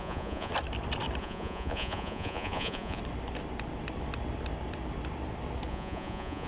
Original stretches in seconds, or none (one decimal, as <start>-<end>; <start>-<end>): 0.5-1.2; 3.0-5.7